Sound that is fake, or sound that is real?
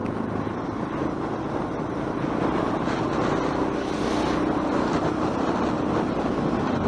real